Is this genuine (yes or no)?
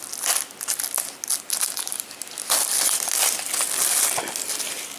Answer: yes